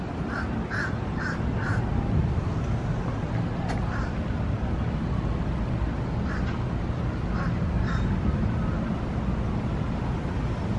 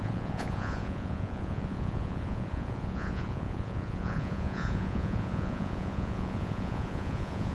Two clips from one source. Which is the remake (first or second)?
second